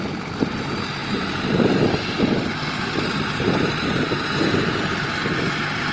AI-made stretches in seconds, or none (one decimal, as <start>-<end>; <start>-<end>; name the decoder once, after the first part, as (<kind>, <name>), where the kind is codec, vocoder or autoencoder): none